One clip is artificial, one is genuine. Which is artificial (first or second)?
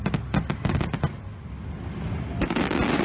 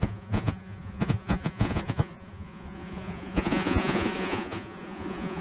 second